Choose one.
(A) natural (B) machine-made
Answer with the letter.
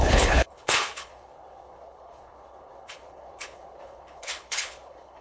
B